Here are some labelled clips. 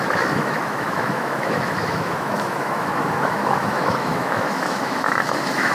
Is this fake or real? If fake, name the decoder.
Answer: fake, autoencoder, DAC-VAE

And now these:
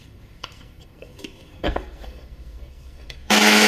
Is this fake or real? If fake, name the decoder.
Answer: fake, codec, SNAC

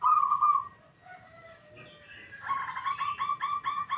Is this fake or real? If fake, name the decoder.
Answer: real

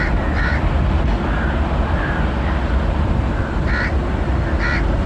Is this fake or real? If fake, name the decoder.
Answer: real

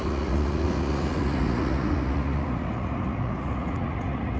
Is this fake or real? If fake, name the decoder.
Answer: fake, vocoder, Vocos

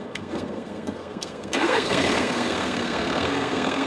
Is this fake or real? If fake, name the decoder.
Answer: fake, codec, SNAC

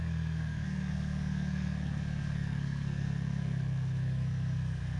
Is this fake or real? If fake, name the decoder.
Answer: fake, codec, SNAC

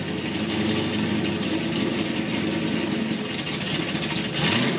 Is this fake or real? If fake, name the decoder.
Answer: real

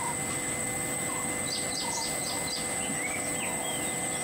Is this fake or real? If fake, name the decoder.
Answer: real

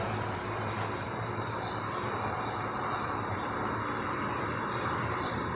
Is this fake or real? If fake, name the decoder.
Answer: fake, vocoder, BigVGAN v2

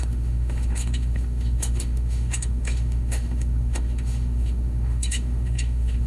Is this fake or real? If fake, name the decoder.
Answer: fake, autoencoder, DAC-VAE